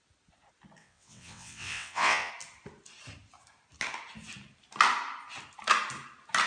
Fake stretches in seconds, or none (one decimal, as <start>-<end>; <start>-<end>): 0.8-2.3